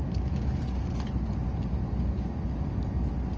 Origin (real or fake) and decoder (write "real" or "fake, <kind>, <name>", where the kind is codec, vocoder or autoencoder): real